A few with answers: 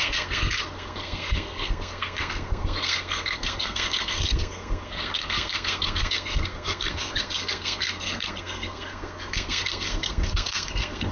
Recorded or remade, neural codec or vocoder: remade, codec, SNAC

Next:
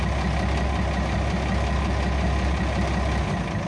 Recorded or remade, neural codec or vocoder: recorded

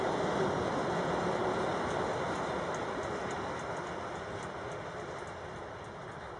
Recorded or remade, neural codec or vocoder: recorded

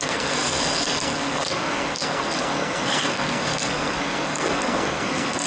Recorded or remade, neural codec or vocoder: remade, codec, SNAC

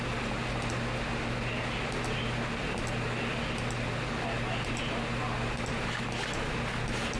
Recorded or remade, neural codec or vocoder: recorded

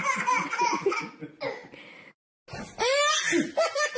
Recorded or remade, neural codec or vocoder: recorded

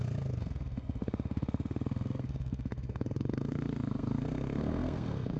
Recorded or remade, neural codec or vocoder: remade, codec, SNAC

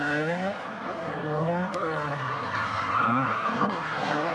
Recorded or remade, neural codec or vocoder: remade, codec, SNAC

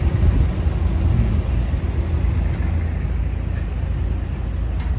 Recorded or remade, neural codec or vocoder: recorded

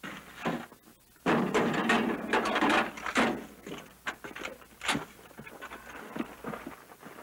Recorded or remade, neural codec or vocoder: recorded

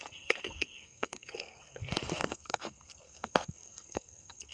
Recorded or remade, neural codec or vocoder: remade, codec, SNAC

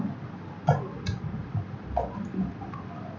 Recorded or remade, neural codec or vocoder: recorded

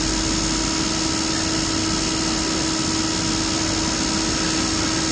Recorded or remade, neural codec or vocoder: recorded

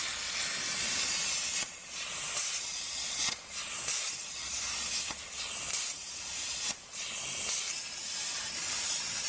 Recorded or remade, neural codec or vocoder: recorded